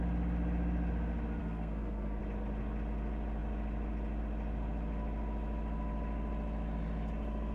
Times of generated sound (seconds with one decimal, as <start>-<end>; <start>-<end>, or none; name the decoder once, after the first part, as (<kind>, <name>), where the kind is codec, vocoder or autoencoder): 1.4-2.2 (codec, SNAC)